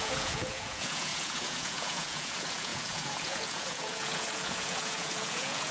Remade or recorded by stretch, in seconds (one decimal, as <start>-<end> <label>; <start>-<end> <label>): 0.0-5.7 remade

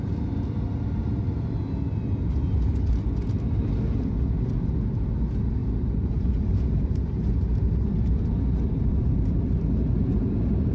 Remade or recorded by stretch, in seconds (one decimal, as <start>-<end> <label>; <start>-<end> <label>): 0.0-5.6 recorded; 5.6-10.7 remade

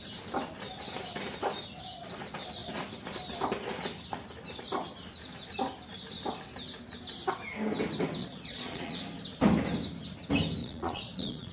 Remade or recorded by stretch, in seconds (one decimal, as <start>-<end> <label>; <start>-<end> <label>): 0.0-8.2 recorded; 8.2-9.0 remade; 9.0-10.6 recorded; 10.6-11.5 remade

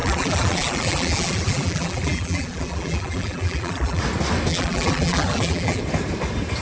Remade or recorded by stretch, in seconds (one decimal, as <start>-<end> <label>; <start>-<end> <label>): 0.0-4.0 remade; 4.0-4.5 recorded; 4.5-5.8 remade; 5.8-6.6 recorded

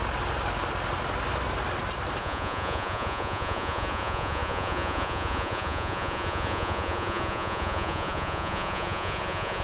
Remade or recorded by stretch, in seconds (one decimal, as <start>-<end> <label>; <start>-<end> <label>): 0.0-2.2 recorded; 2.2-9.6 remade